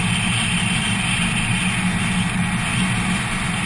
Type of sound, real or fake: real